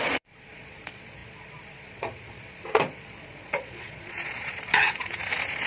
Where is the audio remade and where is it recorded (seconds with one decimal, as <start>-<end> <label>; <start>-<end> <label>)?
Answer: 0.0-5.7 remade